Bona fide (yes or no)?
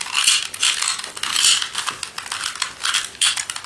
yes